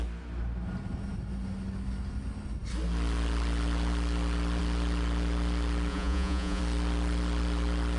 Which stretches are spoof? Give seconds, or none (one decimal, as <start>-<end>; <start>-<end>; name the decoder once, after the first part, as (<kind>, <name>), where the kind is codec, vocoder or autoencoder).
5.9-6.6 (vocoder, Vocos)